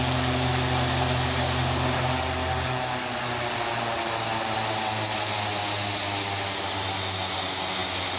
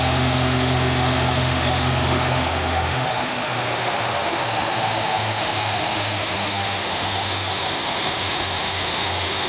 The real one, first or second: first